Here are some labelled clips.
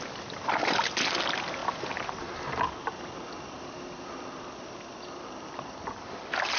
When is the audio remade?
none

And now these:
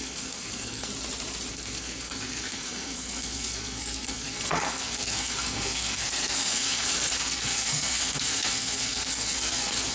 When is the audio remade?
0.0-0.9; 1.5-9.9